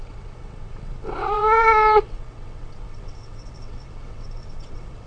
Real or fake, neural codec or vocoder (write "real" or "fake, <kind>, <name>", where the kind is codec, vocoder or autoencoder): fake, vocoder, WaveNeXt